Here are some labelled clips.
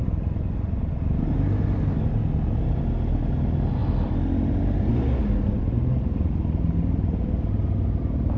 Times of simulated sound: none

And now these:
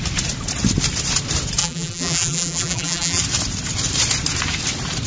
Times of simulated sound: 1.6-3.2

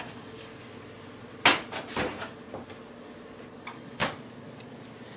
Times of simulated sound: 0.0-0.5; 3.6-4.0